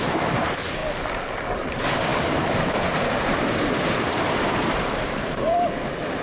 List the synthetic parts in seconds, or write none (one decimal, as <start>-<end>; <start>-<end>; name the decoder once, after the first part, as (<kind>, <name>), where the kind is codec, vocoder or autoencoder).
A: 0.0-0.8 (vocoder, BigVGAN v2); 1.7-6.2